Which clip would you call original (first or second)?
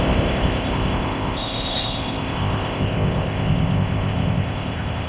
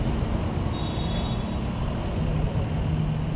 second